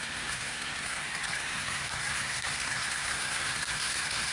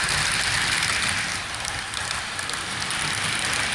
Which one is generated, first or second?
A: first